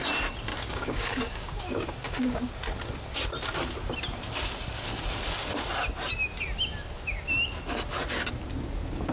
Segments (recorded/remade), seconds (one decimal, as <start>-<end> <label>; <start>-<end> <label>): 0.0-0.5 recorded; 0.5-2.4 remade; 2.4-9.1 recorded